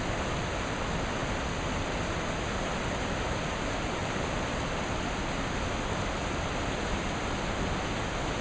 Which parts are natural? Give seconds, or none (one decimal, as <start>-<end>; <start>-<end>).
0.0-8.4